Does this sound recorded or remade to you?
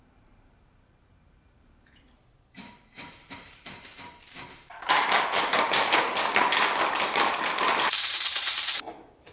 remade